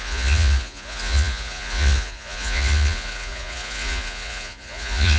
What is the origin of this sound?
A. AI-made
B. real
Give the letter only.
A